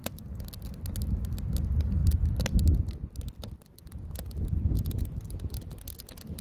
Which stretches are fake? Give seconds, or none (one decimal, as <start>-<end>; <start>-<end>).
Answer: none